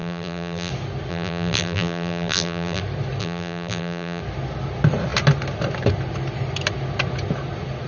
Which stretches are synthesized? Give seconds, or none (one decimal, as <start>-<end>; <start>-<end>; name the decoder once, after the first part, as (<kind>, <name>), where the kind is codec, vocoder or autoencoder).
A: 0.0-0.7 (vocoder, BigVGAN v2); 1.1-2.8; 3.2-4.2